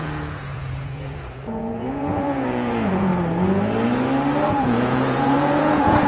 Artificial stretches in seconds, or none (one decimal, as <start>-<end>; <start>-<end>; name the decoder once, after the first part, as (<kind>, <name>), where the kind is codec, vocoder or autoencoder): 0.0-3.1 (vocoder, Vocos); 4.5-6.1